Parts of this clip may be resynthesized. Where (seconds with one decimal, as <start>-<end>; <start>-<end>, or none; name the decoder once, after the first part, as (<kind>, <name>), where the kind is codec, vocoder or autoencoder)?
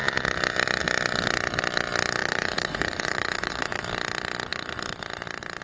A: 2.2-3.8 (vocoder, Vocos)